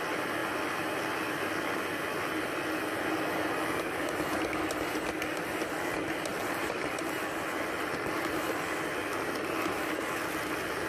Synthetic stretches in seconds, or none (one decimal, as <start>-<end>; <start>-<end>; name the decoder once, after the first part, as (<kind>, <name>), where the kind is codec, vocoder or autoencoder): 0.4-1.0 (vocoder, BigVGAN v2); 6.3-7.2